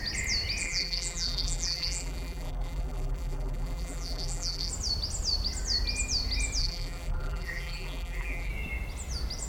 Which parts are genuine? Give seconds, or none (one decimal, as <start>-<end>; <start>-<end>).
0.0-0.6; 4.7-6.6; 8.5-9.5